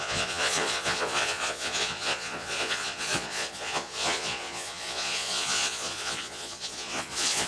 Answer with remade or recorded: remade